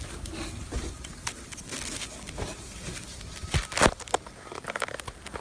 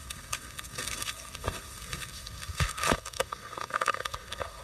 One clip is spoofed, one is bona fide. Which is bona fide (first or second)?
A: first